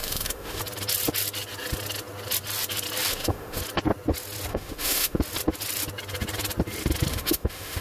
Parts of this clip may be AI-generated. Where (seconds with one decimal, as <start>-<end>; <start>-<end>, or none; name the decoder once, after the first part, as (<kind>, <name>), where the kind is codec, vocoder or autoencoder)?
0.0-0.6 (autoencoder, DAC-VAE); 3.1-3.6; 4.5-5.2; 7.1-7.8